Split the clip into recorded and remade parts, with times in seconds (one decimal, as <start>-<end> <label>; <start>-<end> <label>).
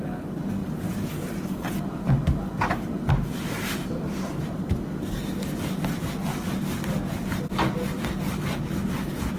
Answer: 0.0-0.6 recorded; 0.6-4.6 remade; 4.6-9.4 recorded